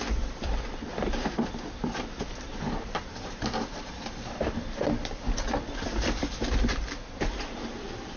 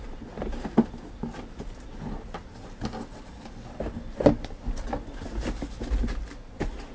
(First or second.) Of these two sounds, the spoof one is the first